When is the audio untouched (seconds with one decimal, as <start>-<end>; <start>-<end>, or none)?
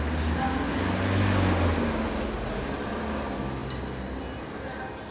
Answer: 0.0-5.1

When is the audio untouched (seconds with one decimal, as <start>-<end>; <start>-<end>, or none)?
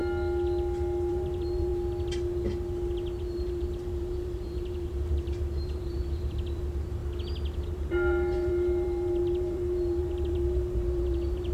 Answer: 0.0-1.1; 1.7-3.2; 7.0-7.7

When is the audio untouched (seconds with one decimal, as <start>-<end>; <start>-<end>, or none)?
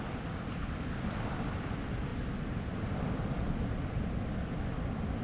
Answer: 0.0-5.2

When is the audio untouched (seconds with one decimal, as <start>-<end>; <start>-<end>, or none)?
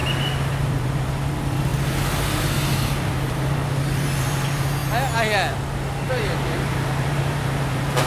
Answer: 0.0-0.6; 1.7-2.4; 4.8-6.1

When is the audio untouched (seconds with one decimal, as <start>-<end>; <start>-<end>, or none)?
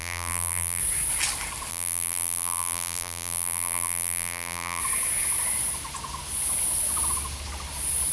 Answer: 0.8-1.7; 4.8-8.1